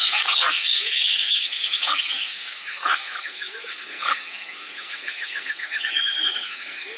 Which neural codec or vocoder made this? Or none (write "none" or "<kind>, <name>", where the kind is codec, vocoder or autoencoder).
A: codec, SNAC